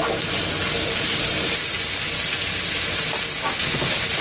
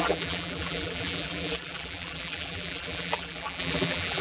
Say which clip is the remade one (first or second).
second